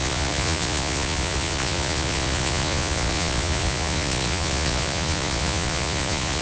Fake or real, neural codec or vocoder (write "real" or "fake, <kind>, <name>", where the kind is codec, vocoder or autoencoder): fake, vocoder, Vocos